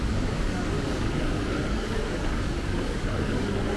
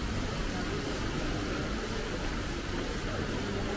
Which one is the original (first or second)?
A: second